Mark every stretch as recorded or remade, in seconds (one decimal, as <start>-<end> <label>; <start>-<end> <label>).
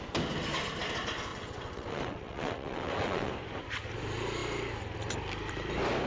0.0-1.3 recorded; 1.3-3.3 remade; 3.3-6.1 recorded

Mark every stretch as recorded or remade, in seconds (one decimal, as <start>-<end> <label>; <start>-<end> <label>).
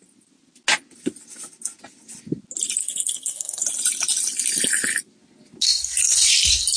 0.0-2.8 recorded; 2.8-3.6 remade; 3.6-6.8 recorded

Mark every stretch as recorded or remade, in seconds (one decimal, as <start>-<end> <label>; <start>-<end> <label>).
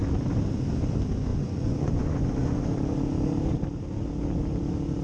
0.0-1.3 recorded; 1.3-2.6 remade; 2.6-5.0 recorded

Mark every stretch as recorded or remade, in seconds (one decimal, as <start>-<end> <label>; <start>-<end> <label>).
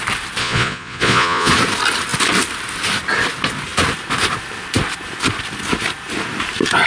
0.0-0.4 recorded; 0.4-1.5 remade; 1.5-6.9 recorded